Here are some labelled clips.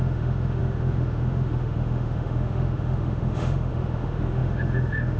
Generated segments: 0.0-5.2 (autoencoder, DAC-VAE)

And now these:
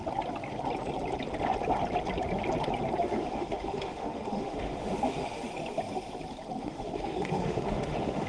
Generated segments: 3.0-5.5 (autoencoder, DAC-VAE); 6.6-8.3

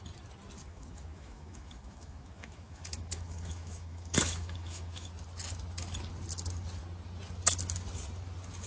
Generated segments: 0.7-5.1 (autoencoder, DAC-VAE)

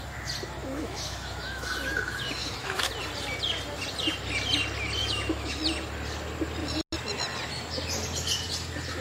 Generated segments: 0.6-2.9 (autoencoder, DAC-VAE); 5.0-5.6

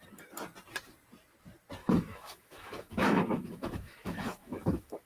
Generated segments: 1.8-5.1 (autoencoder, DAC-VAE)

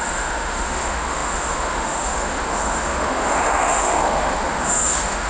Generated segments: 0.0-5.3 (autoencoder, DAC-VAE)

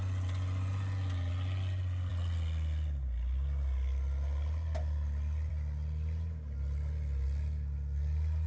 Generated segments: none